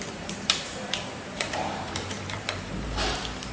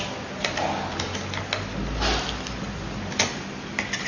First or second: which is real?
second